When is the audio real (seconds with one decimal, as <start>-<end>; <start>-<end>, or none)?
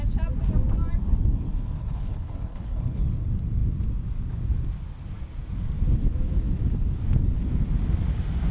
0.0-1.8; 3.0-8.5